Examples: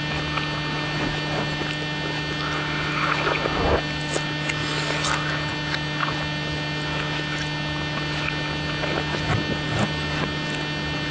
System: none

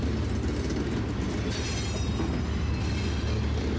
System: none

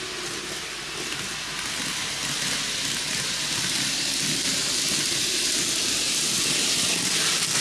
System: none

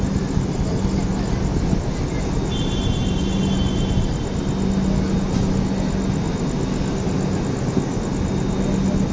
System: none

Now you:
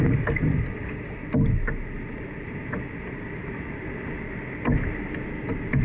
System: none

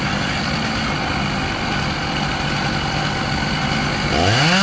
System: none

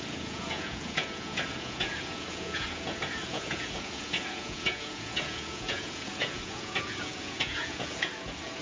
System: vocoder, Vocos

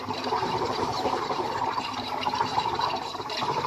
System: vocoder, BigVGAN v2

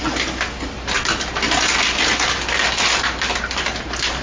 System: none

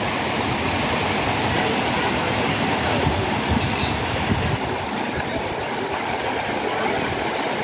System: none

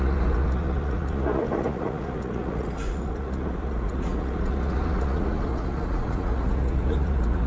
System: vocoder, Vocos